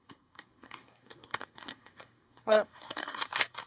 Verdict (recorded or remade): remade